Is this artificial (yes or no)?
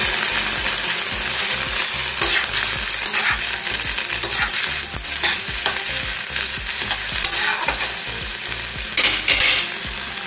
no